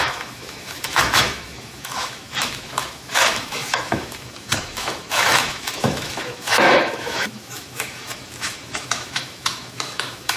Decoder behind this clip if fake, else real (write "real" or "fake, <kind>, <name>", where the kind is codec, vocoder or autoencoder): fake, autoencoder, DAC-VAE